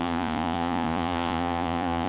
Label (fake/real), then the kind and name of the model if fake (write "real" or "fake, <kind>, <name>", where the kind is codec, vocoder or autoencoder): fake, vocoder, Vocos